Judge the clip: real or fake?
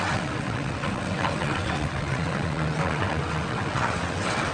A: fake